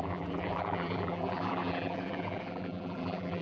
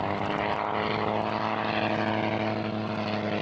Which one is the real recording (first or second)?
second